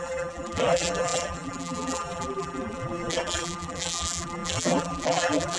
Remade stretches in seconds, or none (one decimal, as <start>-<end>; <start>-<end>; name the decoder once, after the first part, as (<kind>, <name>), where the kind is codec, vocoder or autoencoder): 0.0-5.6 (vocoder, BigVGAN v2)